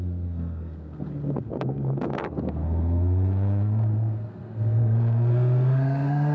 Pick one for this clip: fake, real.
fake